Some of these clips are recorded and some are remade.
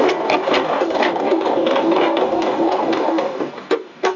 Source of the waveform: remade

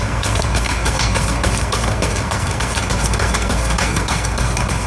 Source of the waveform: remade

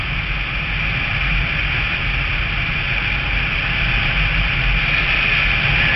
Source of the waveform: recorded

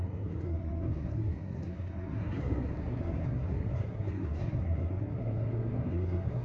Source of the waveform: remade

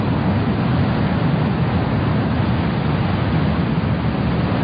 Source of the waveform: recorded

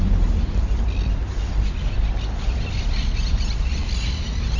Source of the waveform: recorded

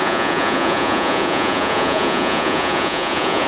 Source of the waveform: remade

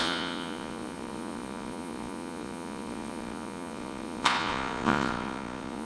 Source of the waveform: remade